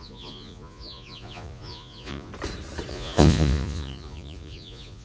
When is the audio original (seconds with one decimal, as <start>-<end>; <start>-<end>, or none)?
2.3-2.9